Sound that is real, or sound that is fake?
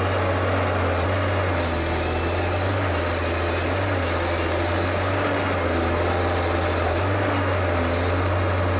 real